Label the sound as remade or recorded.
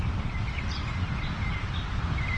remade